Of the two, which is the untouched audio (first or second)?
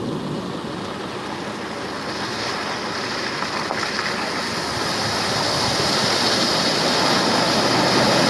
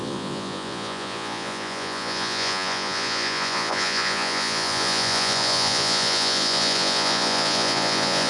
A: first